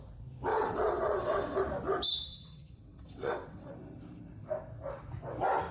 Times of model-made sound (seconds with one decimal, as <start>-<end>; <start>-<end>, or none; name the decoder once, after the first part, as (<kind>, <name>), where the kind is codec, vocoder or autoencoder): 0.5-1.6 (vocoder, WaveNeXt); 2.3-3.7